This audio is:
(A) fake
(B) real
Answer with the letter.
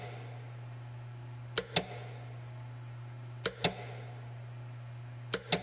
B